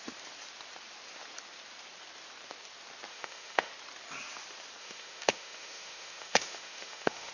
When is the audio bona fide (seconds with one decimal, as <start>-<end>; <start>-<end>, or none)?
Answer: 0.0-3.1; 3.7-4.8